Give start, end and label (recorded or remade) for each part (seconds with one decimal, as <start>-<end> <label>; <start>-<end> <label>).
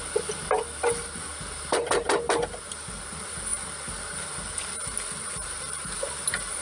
0.0-6.6 recorded